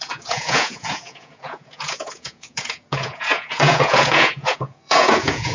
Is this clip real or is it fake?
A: fake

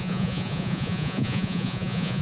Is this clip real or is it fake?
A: fake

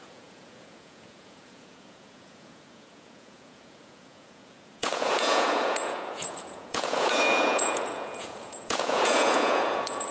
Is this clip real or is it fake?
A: fake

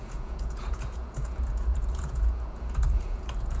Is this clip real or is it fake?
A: fake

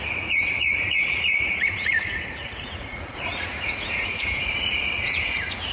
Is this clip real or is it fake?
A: fake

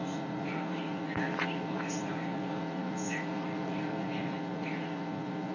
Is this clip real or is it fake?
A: fake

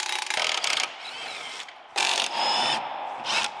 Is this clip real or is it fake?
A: real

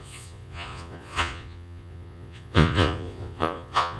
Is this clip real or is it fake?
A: fake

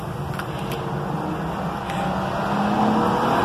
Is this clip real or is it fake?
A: real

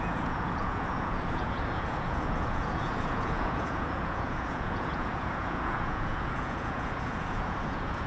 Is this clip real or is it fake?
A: fake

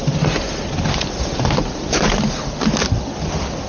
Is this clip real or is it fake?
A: real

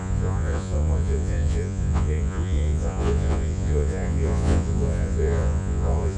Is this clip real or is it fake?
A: fake